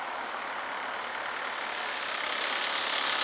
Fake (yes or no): no